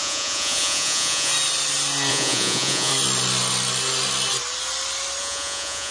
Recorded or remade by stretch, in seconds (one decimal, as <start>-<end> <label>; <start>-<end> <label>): 0.0-1.3 remade; 1.3-2.1 recorded; 2.1-2.9 remade; 2.9-5.2 recorded; 5.2-5.9 remade